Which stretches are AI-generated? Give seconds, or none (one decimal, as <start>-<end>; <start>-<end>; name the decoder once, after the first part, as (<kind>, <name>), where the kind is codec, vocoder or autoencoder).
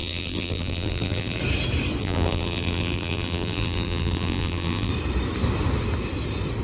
0.0-1.4 (vocoder, BigVGAN v2); 2.0-4.9